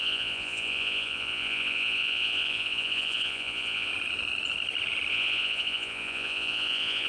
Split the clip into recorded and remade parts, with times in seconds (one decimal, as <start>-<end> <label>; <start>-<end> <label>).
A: 0.0-3.9 remade; 3.9-5.1 recorded; 5.1-7.1 remade